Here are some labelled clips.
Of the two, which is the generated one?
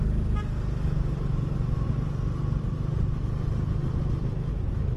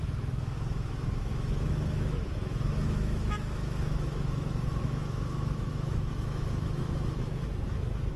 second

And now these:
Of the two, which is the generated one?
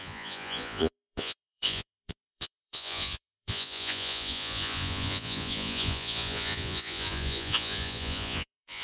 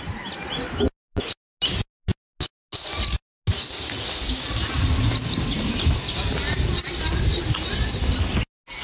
first